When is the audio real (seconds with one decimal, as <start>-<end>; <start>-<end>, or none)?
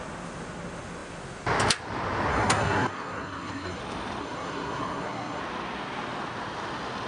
0.0-2.3; 3.8-4.2; 5.4-7.1